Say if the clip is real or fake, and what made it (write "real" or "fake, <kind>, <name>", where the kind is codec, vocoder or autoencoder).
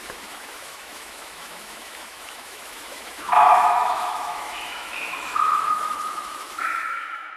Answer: fake, autoencoder, DAC-VAE